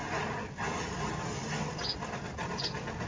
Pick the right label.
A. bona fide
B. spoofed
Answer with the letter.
A